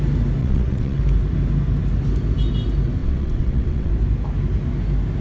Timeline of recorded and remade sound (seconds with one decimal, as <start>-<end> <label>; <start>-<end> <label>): 0.0-0.4 recorded; 0.4-1.0 remade; 1.0-3.0 recorded; 3.0-3.9 remade; 3.9-5.2 recorded